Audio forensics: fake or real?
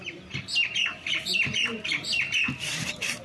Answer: fake